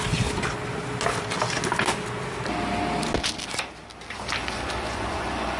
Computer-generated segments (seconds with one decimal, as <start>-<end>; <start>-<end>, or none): 4.4-5.6

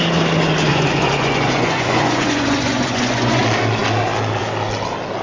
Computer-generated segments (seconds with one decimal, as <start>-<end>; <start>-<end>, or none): 0.7-3.4

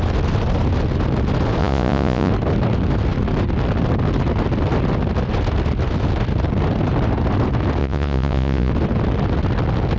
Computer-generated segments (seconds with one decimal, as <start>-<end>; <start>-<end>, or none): 1.6-2.3; 7.8-8.7

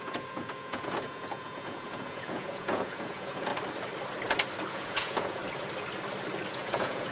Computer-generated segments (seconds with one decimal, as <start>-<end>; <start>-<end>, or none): 0.0-3.5; 4.7-5.4; 6.5-7.1

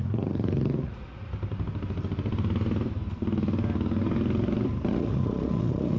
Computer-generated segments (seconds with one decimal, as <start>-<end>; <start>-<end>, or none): 0.0-1.3; 4.9-6.0

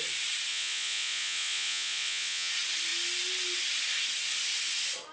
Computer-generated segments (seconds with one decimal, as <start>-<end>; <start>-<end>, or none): 0.5-2.5

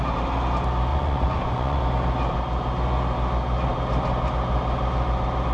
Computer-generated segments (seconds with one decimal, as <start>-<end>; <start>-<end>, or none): 0.9-1.8